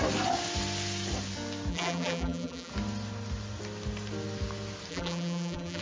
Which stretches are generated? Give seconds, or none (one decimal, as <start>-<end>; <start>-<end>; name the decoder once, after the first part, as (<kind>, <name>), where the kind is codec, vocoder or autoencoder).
1.7-2.7 (vocoder, BigVGAN v2); 4.9-5.8